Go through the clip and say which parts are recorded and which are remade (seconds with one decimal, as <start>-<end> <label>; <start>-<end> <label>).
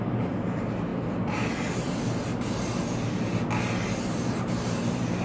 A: 0.0-0.9 remade; 0.9-4.0 recorded; 4.0-5.2 remade